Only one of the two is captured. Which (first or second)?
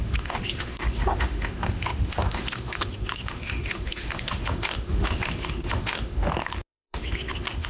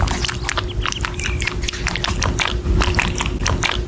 second